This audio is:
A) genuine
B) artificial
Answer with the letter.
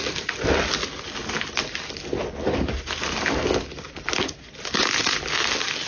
A